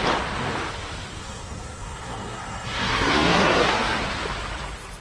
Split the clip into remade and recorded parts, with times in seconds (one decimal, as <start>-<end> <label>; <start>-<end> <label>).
0.0-1.2 recorded; 1.2-4.0 remade; 4.0-5.0 recorded